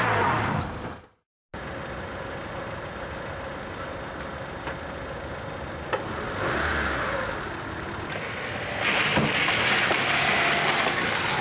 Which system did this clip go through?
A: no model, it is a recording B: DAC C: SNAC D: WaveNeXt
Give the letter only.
A